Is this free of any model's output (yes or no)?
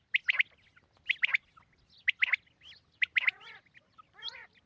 yes